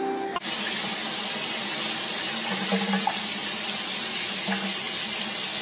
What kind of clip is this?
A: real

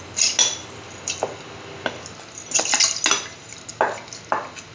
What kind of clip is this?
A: real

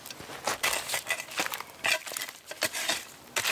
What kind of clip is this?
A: real